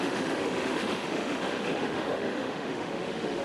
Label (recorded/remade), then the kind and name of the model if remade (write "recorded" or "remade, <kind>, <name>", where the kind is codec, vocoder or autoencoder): remade, autoencoder, DAC-VAE